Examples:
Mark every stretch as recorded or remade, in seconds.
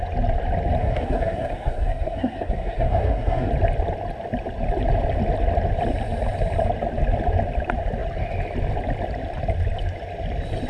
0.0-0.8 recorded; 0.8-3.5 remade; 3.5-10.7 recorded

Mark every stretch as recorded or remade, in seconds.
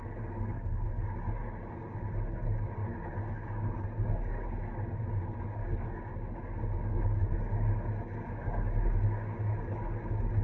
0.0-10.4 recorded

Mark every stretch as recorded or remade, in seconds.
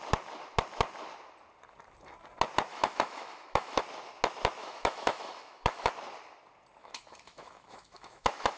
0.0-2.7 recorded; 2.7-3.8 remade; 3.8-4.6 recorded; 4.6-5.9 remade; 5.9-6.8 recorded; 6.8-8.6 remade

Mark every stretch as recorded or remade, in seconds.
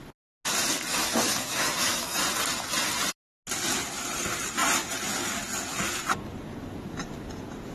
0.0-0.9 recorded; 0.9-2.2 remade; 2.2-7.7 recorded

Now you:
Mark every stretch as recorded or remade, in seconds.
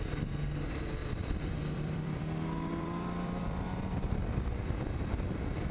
0.0-1.0 recorded; 1.0-4.4 remade; 4.4-5.7 recorded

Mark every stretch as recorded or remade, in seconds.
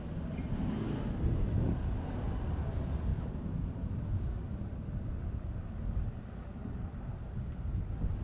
0.0-3.1 recorded; 3.1-4.0 remade; 4.0-4.4 recorded; 4.4-5.2 remade; 5.2-8.2 recorded